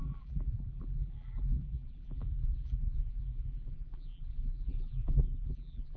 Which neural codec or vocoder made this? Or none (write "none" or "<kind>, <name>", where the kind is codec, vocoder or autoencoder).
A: vocoder, BigVGAN v2